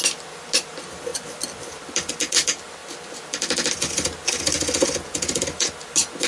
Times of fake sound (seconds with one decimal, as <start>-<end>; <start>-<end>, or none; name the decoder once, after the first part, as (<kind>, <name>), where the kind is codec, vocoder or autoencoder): none